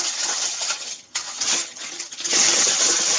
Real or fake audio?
fake